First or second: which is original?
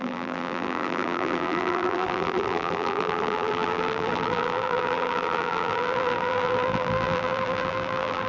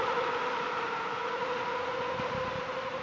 second